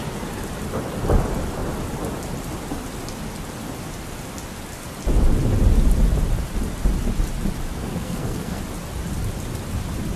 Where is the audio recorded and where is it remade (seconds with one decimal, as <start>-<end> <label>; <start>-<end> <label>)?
0.0-7.8 recorded; 7.8-8.6 remade; 8.6-10.2 recorded